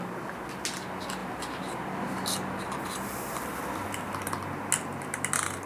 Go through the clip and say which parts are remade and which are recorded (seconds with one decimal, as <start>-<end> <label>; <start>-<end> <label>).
0.0-1.2 recorded; 1.2-3.6 remade; 3.6-5.7 recorded